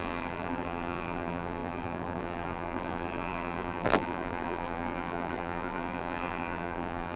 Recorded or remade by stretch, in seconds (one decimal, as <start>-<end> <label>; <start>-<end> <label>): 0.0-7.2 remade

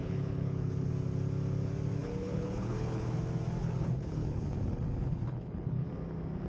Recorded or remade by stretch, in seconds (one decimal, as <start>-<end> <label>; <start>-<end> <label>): 0.0-0.9 remade; 0.9-2.0 recorded; 2.0-3.2 remade; 3.2-3.6 recorded; 3.6-5.9 remade; 5.9-6.5 recorded

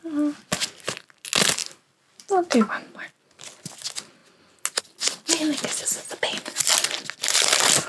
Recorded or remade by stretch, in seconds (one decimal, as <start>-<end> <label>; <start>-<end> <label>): 0.0-7.9 recorded

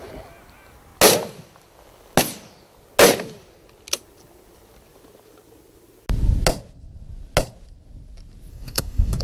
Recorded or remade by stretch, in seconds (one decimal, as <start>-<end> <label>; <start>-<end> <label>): 0.0-8.5 recorded; 8.5-9.2 remade